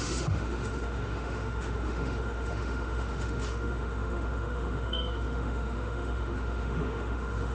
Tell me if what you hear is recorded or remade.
remade